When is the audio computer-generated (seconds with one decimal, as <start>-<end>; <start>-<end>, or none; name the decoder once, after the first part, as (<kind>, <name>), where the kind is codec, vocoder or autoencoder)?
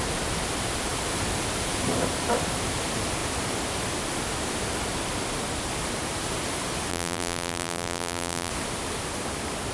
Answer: 6.9-8.5 (vocoder, BigVGAN v2)